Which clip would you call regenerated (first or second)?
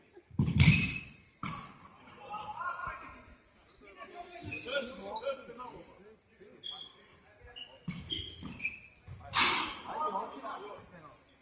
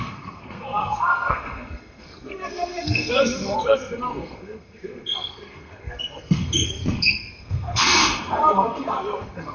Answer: second